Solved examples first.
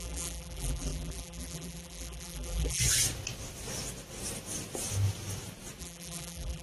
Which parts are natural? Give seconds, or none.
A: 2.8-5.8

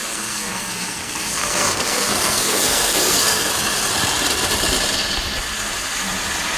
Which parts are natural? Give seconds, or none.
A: 3.5-6.6

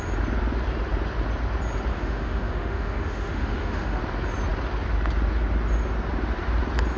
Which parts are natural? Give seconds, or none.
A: 0.0-1.9; 4.0-7.0